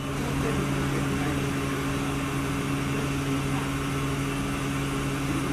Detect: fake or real real